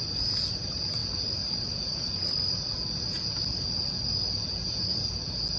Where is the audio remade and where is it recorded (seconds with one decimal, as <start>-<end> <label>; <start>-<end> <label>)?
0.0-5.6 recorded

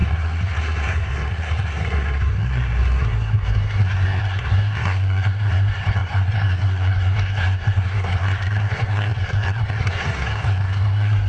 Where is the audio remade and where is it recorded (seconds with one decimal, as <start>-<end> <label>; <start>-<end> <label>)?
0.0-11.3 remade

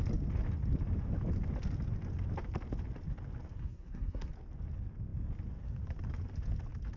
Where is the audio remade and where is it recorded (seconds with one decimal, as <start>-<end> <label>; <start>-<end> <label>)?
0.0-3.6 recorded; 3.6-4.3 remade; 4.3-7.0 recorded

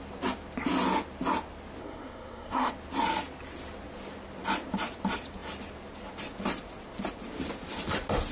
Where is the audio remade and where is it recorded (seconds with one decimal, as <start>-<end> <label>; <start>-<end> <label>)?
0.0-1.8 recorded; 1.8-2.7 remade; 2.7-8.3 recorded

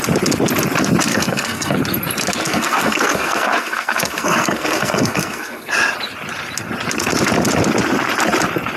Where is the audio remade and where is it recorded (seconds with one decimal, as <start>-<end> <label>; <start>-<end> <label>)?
0.0-1.1 recorded; 1.1-1.8 remade; 1.8-2.4 recorded; 2.4-5.7 remade; 5.7-8.8 recorded

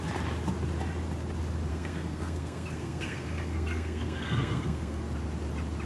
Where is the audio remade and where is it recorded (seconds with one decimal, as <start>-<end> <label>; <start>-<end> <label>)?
0.0-1.7 recorded; 1.7-5.0 remade; 5.0-5.9 recorded

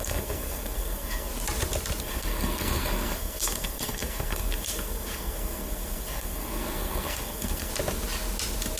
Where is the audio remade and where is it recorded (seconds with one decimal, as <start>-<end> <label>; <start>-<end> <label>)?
0.0-1.3 remade; 1.3-2.0 recorded; 2.0-7.7 remade; 7.7-8.8 recorded